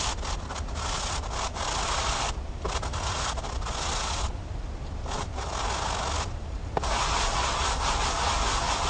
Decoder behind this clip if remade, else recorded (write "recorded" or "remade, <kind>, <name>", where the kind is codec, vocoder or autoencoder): recorded